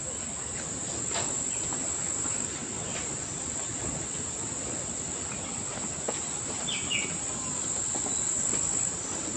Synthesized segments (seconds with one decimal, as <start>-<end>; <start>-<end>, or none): none